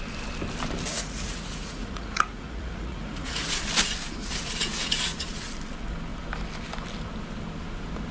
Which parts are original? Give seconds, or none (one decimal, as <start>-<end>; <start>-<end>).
0.0-0.9; 3.6-4.2; 5.5-8.1